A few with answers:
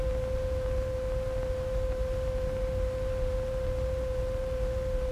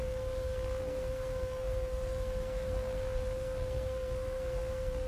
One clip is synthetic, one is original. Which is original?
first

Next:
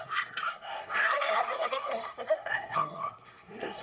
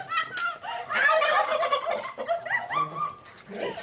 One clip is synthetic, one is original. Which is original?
second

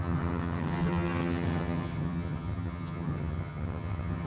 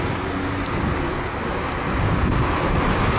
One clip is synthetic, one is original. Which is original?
second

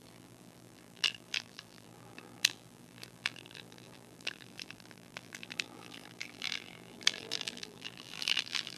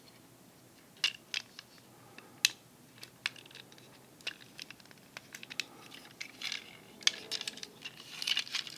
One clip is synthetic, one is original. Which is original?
second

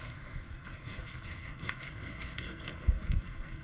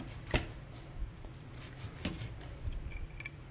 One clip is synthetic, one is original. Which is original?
second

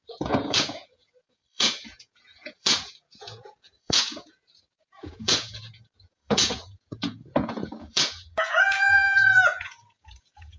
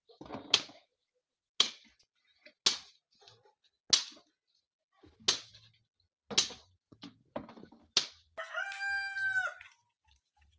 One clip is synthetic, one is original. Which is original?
second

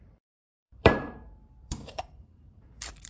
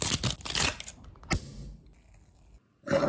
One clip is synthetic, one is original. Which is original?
second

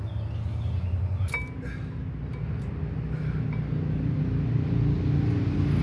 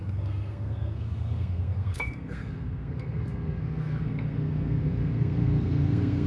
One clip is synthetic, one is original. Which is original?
first